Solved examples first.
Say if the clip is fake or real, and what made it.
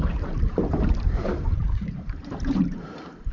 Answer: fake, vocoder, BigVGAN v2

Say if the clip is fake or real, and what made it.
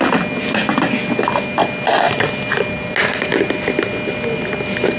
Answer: real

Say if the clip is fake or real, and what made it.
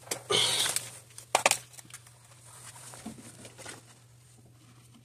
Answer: real